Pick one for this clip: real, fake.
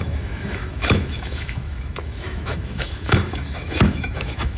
fake